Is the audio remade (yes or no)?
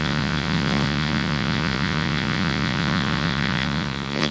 yes